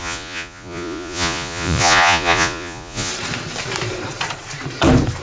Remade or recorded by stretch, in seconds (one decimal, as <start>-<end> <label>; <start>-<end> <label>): 0.0-3.1 remade; 3.1-5.2 recorded